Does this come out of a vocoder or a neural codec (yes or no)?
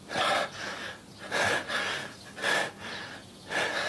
no